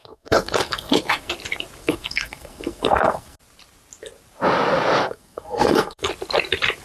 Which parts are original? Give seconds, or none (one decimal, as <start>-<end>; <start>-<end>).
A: 1.3-1.8; 3.4-5.0; 6.1-6.8